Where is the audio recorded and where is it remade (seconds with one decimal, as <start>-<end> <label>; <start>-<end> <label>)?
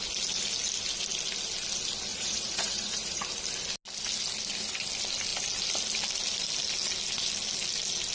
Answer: 0.0-2.1 recorded; 2.1-3.2 remade; 3.2-8.1 recorded